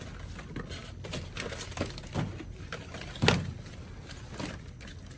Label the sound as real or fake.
real